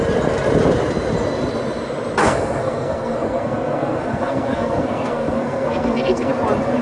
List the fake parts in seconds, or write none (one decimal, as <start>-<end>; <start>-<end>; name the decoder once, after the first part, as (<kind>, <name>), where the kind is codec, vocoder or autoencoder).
2.2-6.3 (codec, SNAC)